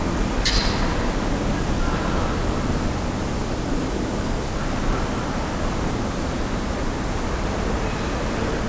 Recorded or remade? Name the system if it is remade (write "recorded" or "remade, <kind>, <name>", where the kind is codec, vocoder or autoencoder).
recorded